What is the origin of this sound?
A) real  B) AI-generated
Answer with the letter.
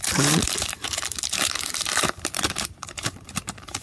B